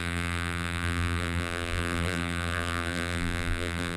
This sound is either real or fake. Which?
fake